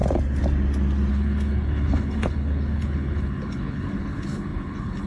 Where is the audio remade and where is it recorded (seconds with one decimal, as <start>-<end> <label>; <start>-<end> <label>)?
0.0-1.1 recorded; 1.1-5.1 remade